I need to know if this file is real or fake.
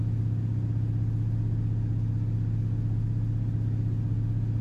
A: real